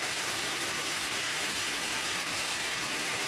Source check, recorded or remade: remade